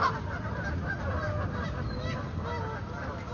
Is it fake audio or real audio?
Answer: real